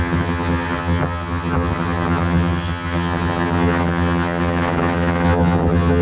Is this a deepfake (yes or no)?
yes